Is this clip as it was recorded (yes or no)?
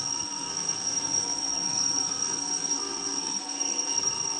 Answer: no